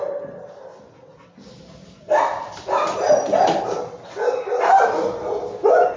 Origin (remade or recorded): recorded